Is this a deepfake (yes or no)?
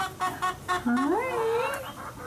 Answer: no